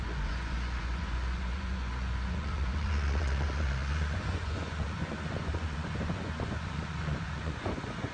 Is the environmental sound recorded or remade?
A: remade